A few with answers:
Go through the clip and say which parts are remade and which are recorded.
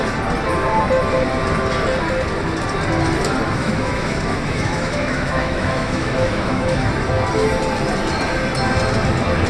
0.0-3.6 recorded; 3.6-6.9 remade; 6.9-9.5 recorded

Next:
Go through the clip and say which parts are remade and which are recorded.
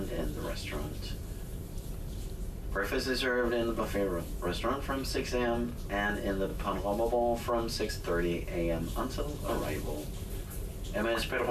0.0-6.5 recorded; 6.5-7.9 remade; 7.9-11.5 recorded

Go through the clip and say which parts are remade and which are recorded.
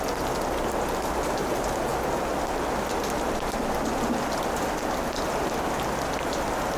0.0-6.8 recorded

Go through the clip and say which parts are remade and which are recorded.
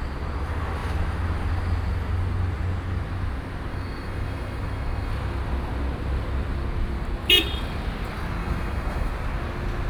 0.0-3.7 recorded; 3.7-5.1 remade; 5.1-8.4 recorded; 8.4-9.1 remade; 9.1-9.9 recorded